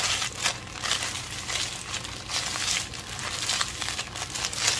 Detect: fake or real real